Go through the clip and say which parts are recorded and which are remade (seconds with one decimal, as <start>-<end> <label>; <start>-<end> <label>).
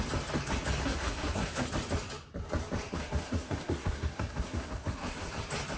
0.0-0.8 recorded; 0.8-1.7 remade; 1.7-2.9 recorded; 2.9-5.3 remade; 5.3-5.8 recorded